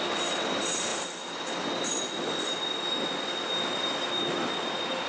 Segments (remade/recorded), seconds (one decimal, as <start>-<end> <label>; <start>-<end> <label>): 0.0-5.1 recorded